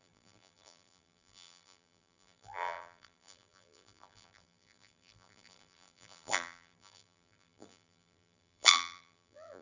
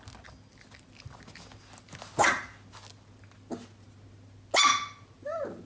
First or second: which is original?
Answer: second